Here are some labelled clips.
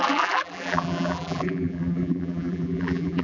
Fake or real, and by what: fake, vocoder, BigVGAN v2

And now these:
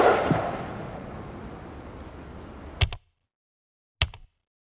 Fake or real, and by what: real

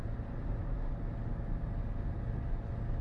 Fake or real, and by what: real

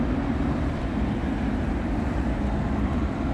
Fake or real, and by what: fake, vocoder, BigVGAN v2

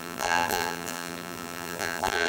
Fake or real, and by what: fake, vocoder, BigVGAN v2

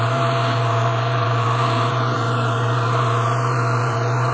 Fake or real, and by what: fake, vocoder, BigVGAN v2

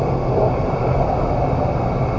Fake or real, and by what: real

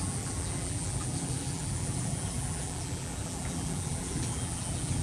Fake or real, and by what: fake, vocoder, BigVGAN v2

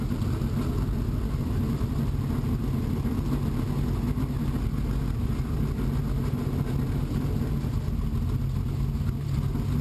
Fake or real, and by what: real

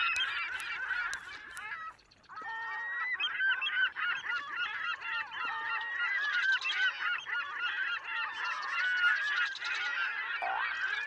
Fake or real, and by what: real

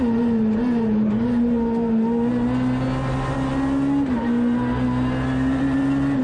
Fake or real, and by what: real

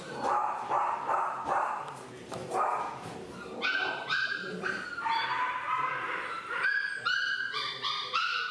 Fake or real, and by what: fake, vocoder, BigVGAN v2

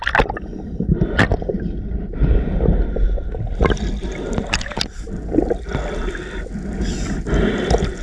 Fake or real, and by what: real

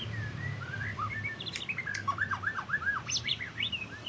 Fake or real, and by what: fake, vocoder, BigVGAN v2